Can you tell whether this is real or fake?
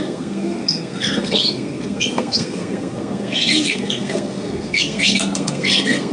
fake